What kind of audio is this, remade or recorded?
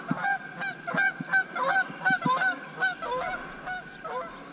recorded